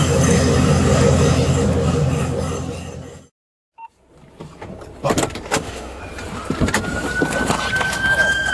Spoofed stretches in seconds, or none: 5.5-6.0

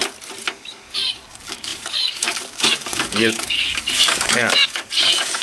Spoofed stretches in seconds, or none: 0.5-5.4

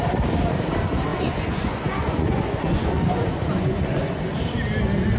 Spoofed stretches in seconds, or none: 1.1-4.2

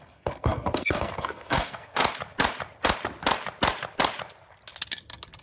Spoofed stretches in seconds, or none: 0.0-2.0